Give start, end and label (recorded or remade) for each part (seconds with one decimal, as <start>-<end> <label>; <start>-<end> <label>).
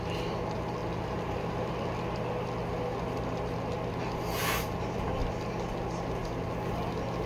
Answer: 0.0-0.8 recorded; 0.8-1.7 remade; 1.7-7.3 recorded